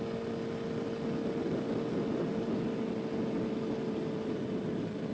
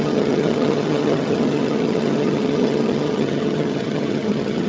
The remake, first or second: second